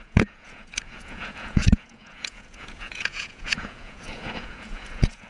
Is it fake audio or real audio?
fake